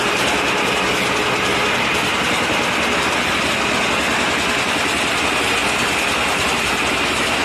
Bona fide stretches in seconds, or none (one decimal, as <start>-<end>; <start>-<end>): 0.0-7.4